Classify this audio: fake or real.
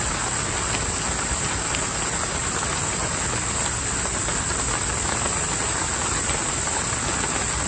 real